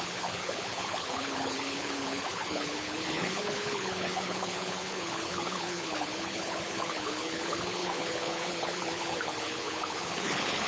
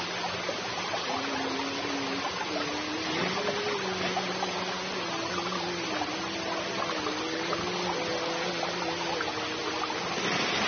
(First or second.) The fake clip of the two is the first